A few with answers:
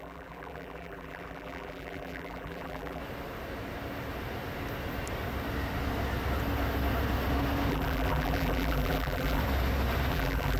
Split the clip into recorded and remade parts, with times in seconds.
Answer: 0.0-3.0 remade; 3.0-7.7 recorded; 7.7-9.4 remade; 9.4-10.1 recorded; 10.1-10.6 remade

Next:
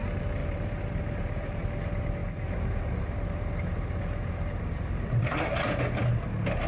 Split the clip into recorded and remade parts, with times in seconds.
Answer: 0.0-0.4 recorded; 0.4-1.6 remade; 1.6-2.2 recorded; 2.2-5.8 remade; 5.8-6.7 recorded